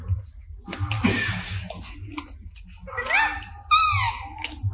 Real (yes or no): yes